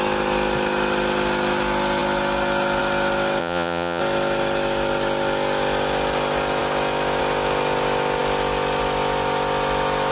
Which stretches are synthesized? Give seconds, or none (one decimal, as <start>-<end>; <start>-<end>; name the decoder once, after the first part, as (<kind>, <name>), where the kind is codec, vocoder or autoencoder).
3.4-4.0 (vocoder, Vocos)